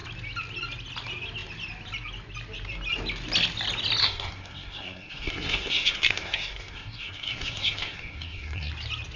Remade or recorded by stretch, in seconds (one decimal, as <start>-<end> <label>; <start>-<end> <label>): 0.0-4.0 recorded; 4.0-8.7 remade; 8.7-9.2 recorded